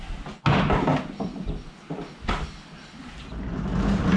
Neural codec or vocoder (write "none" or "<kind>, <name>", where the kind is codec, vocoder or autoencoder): none